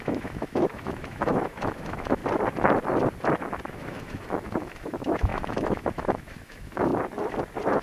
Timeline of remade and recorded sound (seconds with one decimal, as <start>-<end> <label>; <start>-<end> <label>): 0.0-2.2 remade; 2.2-3.7 recorded; 3.7-6.9 remade; 6.9-7.8 recorded